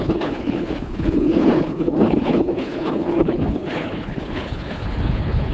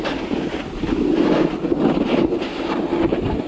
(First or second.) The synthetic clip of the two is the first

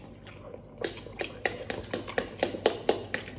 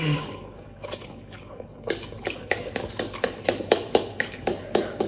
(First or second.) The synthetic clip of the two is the second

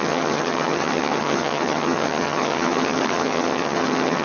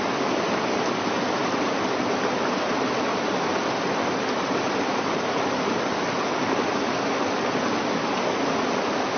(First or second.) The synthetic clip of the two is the first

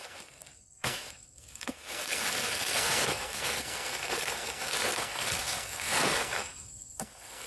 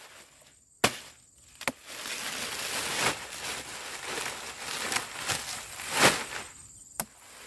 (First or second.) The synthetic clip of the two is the first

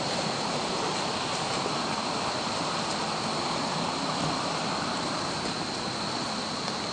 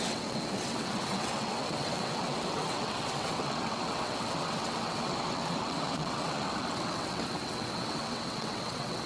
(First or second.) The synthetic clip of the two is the second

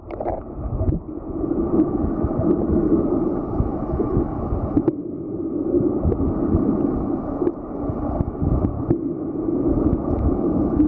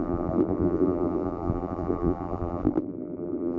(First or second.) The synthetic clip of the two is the second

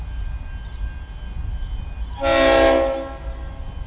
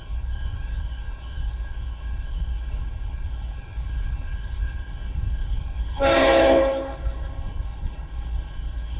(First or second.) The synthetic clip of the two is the second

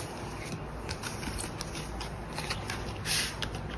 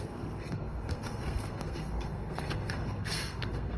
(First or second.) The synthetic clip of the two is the second